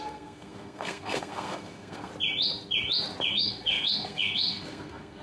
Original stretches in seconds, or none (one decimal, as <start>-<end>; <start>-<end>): 2.1-3.3